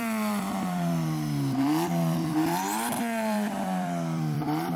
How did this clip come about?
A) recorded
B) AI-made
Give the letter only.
B